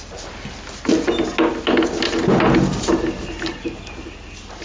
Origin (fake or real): real